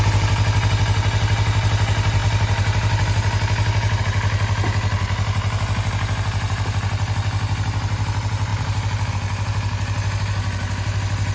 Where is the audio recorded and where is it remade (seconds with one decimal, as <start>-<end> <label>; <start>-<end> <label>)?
0.0-8.5 recorded; 8.5-9.1 remade; 9.1-11.3 recorded